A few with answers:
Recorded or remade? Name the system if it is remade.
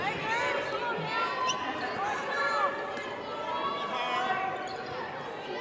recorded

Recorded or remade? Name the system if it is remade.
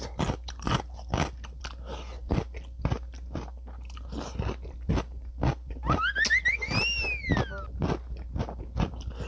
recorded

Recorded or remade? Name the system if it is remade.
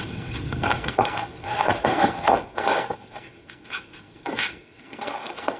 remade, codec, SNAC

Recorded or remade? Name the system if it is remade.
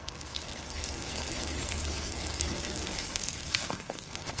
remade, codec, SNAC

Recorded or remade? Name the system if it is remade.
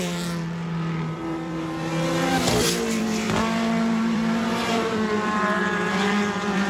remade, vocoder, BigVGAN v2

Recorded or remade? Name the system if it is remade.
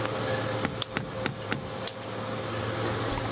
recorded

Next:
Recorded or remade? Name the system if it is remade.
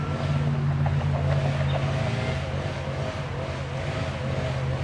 recorded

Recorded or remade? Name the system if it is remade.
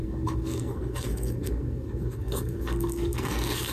remade, codec, SNAC